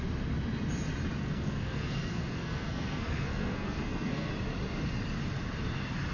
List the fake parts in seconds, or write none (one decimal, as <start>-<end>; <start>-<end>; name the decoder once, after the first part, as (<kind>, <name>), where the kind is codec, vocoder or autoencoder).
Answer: 1.2-4.3 (codec, SNAC)